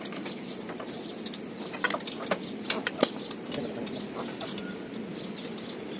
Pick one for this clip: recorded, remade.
recorded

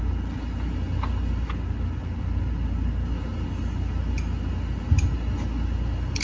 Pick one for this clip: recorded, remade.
recorded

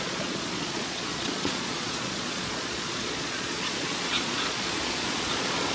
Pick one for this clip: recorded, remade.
remade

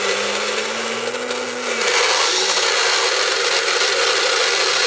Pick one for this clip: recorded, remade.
recorded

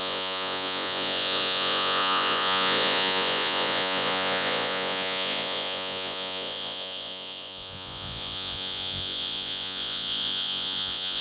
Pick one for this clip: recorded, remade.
remade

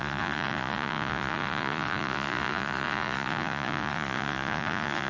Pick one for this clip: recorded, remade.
remade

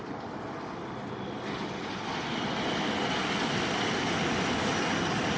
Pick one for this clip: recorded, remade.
recorded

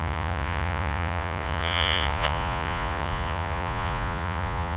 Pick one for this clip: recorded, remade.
remade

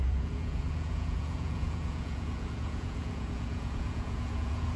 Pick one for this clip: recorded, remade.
remade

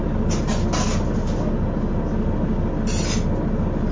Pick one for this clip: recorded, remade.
recorded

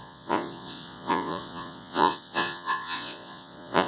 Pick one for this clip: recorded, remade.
remade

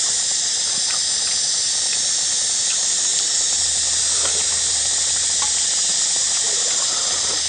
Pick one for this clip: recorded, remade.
recorded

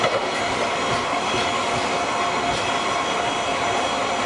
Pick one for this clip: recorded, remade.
recorded